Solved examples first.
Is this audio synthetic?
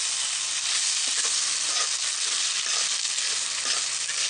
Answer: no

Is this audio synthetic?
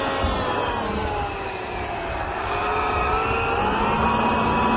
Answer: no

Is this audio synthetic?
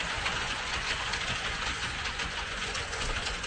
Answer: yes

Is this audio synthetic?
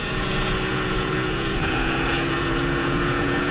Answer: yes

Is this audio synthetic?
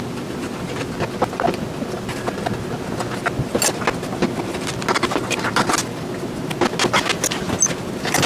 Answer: no